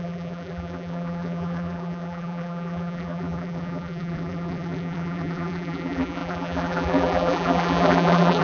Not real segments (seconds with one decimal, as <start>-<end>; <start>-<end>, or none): 0.0-8.4